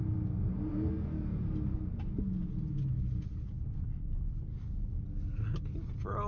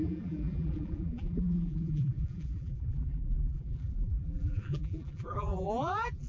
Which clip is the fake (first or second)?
second